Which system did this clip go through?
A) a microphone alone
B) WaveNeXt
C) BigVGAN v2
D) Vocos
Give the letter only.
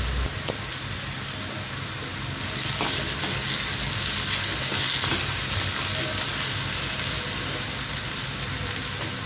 A